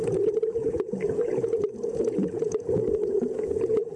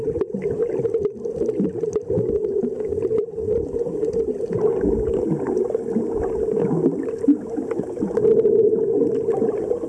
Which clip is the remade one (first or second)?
first